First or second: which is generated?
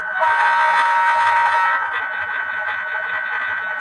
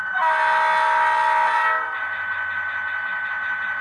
first